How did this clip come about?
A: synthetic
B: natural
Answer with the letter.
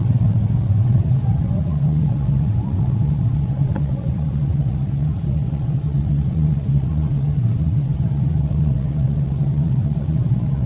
A